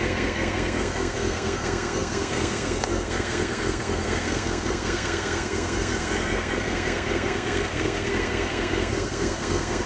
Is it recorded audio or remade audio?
remade